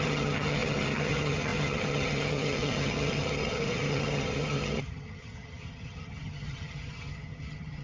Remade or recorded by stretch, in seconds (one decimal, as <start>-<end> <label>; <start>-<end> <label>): 0.0-7.8 remade